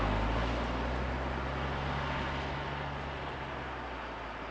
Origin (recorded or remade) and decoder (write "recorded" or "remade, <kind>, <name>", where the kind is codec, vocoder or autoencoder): recorded